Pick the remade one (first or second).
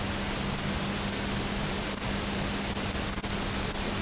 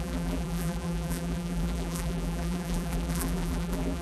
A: second